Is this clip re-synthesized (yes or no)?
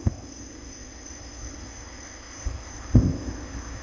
yes